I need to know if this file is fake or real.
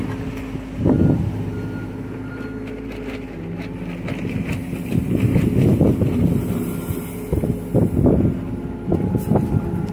real